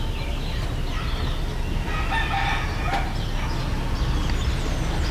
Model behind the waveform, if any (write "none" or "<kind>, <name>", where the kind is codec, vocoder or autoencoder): none